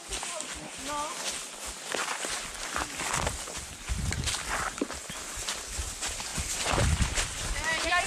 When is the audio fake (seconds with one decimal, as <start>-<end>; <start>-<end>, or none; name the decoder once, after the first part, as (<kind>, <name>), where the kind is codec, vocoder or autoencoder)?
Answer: 6.3-7.0 (vocoder, BigVGAN v2)

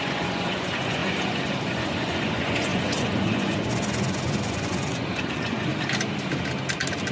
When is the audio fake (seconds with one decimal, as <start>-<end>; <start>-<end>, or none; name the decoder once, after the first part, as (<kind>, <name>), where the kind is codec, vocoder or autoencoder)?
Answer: 0.0-5.7 (vocoder, Vocos)